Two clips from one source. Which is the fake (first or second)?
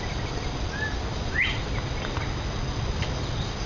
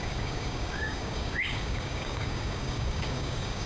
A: second